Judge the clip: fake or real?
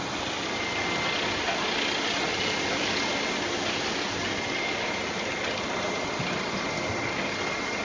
real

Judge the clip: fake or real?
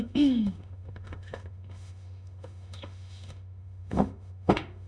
fake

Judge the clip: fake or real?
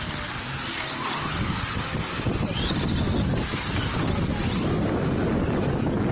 real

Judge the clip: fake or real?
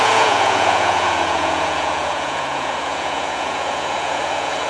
fake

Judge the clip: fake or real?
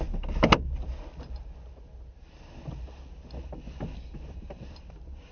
real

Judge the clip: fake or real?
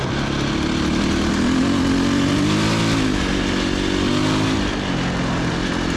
real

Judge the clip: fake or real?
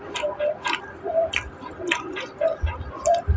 real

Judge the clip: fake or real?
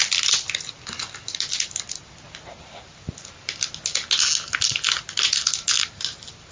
real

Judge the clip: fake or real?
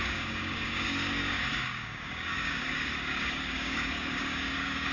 fake